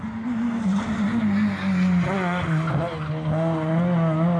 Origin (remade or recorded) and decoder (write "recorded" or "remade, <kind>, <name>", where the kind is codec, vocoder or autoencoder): recorded